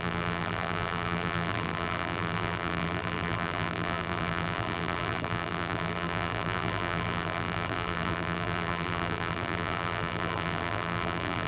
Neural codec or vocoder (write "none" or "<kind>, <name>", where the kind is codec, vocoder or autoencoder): vocoder, BigVGAN v2